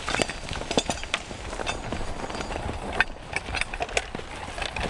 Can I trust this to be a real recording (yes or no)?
yes